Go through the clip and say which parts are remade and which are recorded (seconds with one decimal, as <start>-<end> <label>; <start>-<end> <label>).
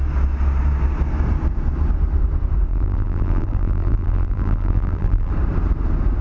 0.0-2.7 recorded; 2.7-5.3 remade; 5.3-6.2 recorded